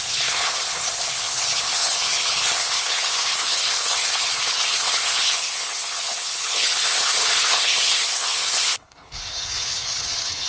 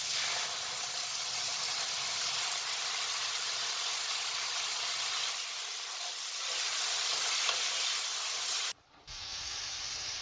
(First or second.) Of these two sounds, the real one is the second